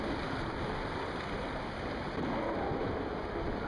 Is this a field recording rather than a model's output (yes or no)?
yes